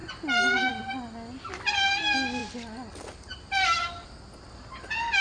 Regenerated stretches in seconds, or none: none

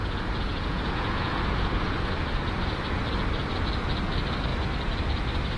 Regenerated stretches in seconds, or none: 0.0-3.0 (vocoder, Vocos)